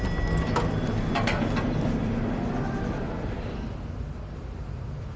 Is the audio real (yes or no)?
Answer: yes